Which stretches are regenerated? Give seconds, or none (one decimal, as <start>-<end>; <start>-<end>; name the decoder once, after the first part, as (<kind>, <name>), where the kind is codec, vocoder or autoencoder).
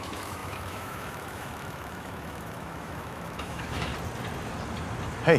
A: 0.0-3.9 (autoencoder, DAC-VAE)